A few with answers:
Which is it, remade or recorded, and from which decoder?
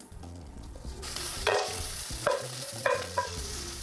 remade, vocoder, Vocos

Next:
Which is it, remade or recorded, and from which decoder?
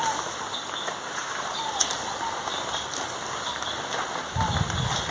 recorded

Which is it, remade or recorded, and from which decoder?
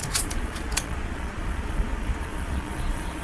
remade, vocoder, Vocos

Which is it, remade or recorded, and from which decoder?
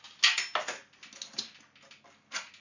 recorded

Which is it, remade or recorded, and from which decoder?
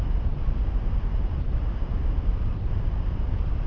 recorded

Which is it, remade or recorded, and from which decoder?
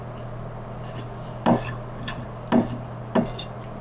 recorded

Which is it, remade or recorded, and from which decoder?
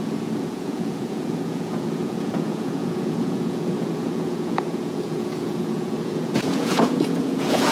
remade, vocoder, Vocos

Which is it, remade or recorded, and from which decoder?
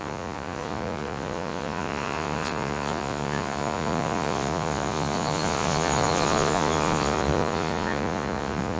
remade, vocoder, Vocos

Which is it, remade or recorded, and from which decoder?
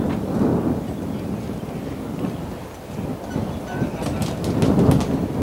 recorded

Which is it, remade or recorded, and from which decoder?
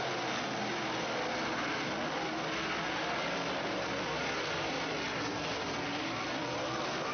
recorded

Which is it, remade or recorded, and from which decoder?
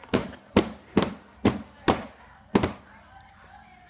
recorded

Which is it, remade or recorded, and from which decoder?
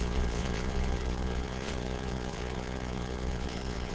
remade, vocoder, Vocos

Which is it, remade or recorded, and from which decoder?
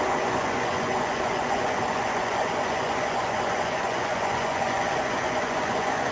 remade, vocoder, Vocos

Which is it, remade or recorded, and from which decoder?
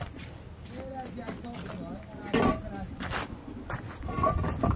recorded